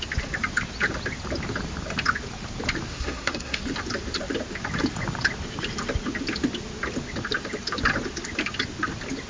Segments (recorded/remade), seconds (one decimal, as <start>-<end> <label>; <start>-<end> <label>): 0.0-2.9 recorded; 2.9-3.6 remade; 3.6-9.3 recorded

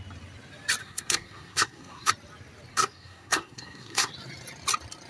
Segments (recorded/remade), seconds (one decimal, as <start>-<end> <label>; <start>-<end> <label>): 0.0-0.8 recorded; 0.8-2.1 remade; 2.1-2.7 recorded; 2.7-4.1 remade; 4.1-5.1 recorded

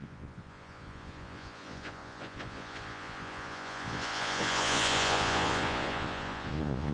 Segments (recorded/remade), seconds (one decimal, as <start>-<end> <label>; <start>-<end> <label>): 0.0-6.9 remade

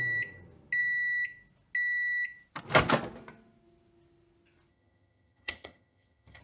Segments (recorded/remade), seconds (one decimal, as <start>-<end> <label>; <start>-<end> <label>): 0.0-4.7 recorded; 4.7-6.4 remade

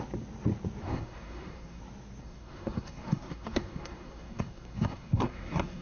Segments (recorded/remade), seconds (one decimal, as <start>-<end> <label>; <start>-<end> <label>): 0.0-0.8 recorded; 0.8-1.8 remade; 1.8-2.2 recorded; 2.2-5.8 remade